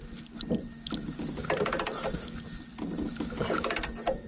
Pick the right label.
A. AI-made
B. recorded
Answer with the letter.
B